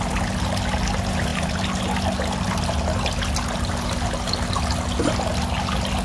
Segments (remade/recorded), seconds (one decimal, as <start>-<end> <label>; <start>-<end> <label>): 0.0-6.0 recorded